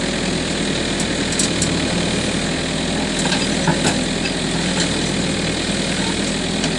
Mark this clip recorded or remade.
recorded